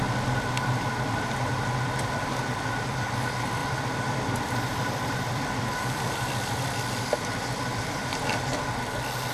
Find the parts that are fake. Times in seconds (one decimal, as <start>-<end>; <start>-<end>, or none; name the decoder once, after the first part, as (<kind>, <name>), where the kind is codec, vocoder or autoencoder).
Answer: 3.6-7.0 (vocoder, BigVGAN v2)